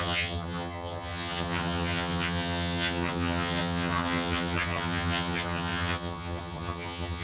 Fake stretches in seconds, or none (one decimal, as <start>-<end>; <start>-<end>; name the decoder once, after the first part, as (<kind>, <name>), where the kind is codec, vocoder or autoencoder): 0.0-7.2 (vocoder, HiFi-GAN)